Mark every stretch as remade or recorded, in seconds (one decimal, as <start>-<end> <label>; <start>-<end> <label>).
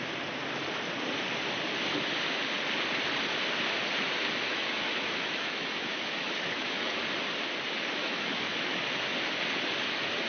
0.0-4.5 recorded; 4.5-6.9 remade; 6.9-8.0 recorded; 8.0-8.8 remade; 8.8-10.3 recorded